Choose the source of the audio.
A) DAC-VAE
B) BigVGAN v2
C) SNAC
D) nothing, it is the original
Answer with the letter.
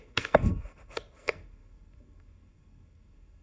C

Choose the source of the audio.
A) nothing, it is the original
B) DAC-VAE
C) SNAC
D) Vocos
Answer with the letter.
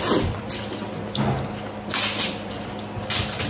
A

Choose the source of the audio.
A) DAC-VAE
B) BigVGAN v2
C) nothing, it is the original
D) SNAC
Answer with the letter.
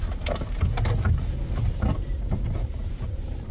C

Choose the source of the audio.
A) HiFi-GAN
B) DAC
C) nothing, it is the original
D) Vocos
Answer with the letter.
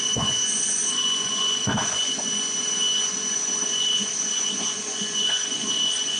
D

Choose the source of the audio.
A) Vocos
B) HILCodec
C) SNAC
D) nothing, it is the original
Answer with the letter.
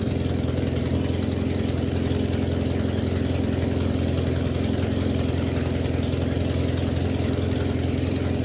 D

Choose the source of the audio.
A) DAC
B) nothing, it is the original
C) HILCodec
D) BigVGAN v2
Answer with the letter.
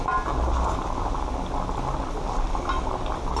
B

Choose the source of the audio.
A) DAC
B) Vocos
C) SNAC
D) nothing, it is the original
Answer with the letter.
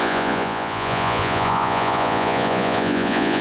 B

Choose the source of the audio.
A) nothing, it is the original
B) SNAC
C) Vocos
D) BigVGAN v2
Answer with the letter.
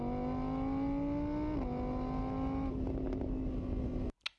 A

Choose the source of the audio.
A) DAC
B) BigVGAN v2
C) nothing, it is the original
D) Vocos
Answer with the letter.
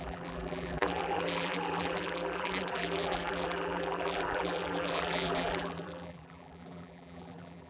B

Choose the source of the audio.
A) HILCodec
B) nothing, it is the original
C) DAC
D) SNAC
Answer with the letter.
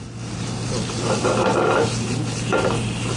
B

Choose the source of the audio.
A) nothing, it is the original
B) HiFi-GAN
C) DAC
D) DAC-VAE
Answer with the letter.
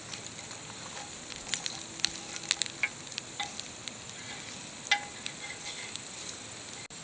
A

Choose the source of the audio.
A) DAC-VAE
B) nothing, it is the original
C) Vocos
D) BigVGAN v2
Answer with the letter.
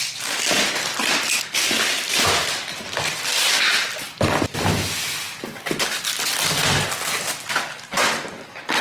B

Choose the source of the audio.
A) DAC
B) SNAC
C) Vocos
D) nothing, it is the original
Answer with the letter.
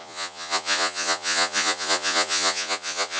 C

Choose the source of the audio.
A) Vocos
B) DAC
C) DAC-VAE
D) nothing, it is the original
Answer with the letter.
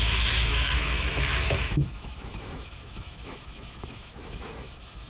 C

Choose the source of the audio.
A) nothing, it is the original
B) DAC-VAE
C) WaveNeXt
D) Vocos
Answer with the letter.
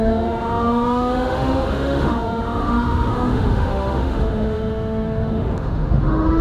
B